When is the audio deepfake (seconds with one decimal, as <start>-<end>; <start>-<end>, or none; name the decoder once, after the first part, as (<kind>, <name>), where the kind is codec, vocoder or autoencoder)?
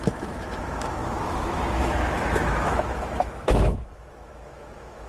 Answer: 0.0-5.1 (autoencoder, DAC-VAE)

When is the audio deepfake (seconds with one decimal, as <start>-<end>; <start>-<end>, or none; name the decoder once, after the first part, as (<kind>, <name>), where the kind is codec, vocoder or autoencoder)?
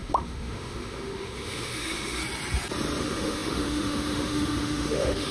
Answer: 0.0-2.2 (autoencoder, DAC-VAE); 3.0-5.3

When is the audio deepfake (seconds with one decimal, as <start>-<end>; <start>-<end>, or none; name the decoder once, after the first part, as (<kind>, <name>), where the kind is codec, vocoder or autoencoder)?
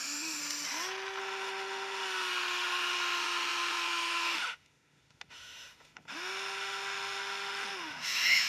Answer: 0.0-0.4 (autoencoder, DAC-VAE); 1.2-8.5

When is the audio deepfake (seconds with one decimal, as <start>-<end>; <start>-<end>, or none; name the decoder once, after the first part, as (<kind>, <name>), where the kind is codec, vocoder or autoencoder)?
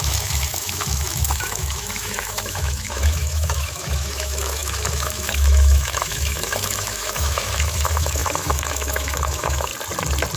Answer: 0.0-9.7 (autoencoder, DAC-VAE)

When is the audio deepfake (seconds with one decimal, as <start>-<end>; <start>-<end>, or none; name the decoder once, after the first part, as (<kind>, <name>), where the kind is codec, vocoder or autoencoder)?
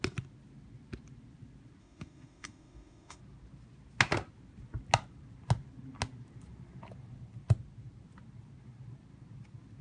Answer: 1.8-3.2 (autoencoder, DAC-VAE)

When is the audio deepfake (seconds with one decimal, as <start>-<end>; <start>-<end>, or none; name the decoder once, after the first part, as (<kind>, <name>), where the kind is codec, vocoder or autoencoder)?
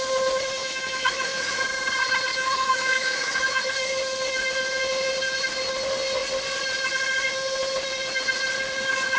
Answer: 0.6-1.6 (autoencoder, DAC-VAE); 2.3-3.6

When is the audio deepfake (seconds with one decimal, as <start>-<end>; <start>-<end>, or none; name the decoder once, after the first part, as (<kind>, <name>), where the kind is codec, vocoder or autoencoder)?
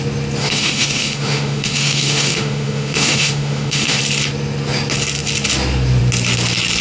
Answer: 0.4-4.0 (autoencoder, DAC-VAE)